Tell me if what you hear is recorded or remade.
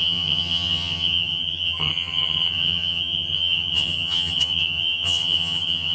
remade